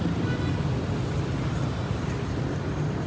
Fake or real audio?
real